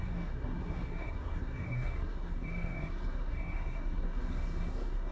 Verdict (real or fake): fake